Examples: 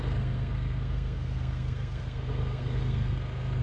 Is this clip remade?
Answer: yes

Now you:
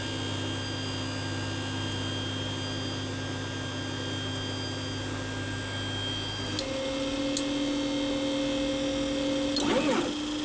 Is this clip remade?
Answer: no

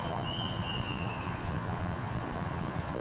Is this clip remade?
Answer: yes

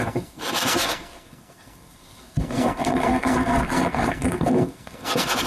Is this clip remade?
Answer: yes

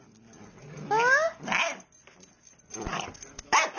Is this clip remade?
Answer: no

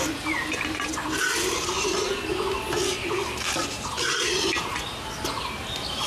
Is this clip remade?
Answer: no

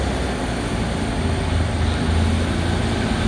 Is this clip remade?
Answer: no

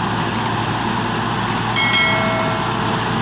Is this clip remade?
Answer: no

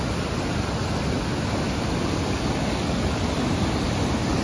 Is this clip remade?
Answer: no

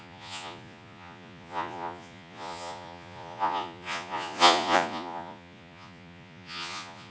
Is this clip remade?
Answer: yes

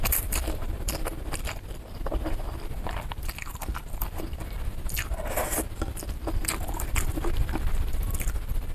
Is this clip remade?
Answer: yes